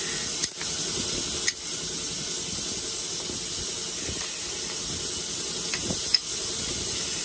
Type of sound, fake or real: real